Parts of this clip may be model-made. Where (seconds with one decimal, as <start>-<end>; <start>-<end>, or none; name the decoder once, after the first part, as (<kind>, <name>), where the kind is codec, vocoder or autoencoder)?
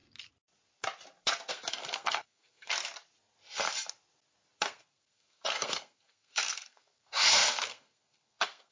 1.5-2.7 (codec, SNAC); 4.6-8.7